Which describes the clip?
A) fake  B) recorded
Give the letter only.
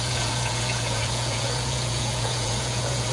A